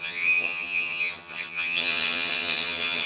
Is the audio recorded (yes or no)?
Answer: no